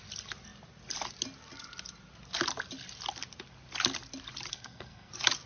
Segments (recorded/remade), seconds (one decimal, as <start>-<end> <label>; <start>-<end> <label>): 0.0-4.5 recorded; 4.5-5.1 remade; 5.1-5.5 recorded